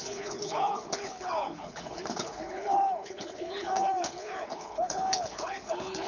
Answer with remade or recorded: remade